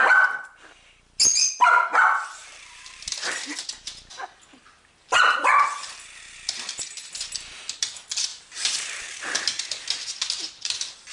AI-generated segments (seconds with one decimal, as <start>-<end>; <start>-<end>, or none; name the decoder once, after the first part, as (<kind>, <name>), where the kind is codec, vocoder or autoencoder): 1.9-3.1 (vocoder, BigVGAN v2); 8.3-9.3